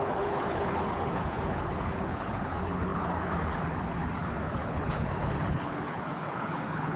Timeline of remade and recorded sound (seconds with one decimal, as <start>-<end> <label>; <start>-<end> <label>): 0.0-7.0 remade